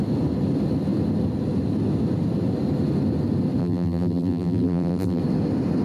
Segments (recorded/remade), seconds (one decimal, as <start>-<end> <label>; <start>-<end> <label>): 0.0-3.6 recorded; 3.6-5.2 remade; 5.2-5.8 recorded